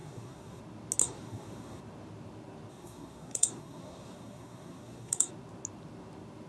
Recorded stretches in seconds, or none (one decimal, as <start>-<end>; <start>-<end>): 0.6-1.0; 1.8-2.7; 5.3-6.5